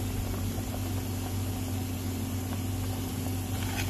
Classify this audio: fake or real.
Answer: real